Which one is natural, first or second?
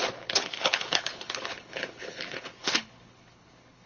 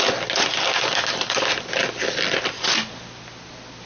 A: second